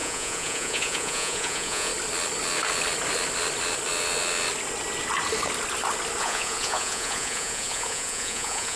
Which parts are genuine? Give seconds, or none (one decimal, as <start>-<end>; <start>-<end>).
1.9-6.2